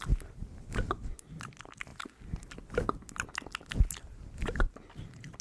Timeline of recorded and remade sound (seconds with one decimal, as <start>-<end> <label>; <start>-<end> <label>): 0.0-5.4 recorded